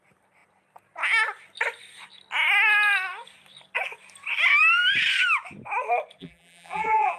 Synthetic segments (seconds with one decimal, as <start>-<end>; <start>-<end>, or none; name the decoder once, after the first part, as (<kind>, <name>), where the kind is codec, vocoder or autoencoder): 6.2-7.2 (vocoder, BigVGAN v2)